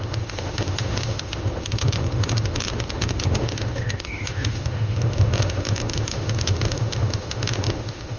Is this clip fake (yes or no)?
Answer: yes